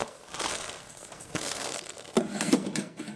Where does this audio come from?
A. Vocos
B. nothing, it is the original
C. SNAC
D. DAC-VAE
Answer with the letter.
C